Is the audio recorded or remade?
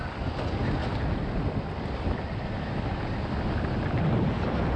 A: recorded